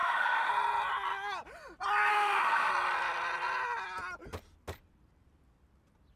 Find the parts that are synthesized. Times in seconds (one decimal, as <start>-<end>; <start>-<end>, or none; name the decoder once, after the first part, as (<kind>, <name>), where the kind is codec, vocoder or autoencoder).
0.0-0.5 (autoencoder, DAC-VAE); 2.1-2.7